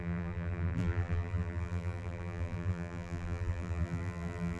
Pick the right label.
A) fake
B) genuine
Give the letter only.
A